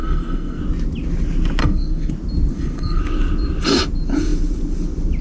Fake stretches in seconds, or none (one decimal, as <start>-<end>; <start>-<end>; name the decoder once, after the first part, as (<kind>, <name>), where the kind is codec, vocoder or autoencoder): 0.0-0.6 (codec, SNAC); 1.6-2.1; 2.5-3.0